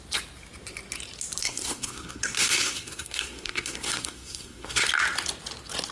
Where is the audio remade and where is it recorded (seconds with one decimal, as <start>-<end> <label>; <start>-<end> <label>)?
0.0-1.4 recorded; 1.4-4.9 remade; 4.9-5.9 recorded